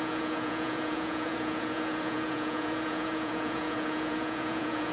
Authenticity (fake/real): fake